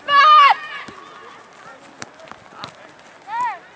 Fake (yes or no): no